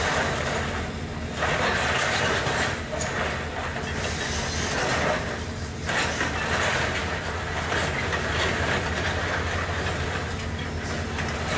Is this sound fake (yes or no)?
no